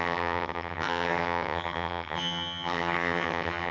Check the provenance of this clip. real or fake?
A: fake